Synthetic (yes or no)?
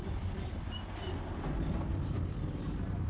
yes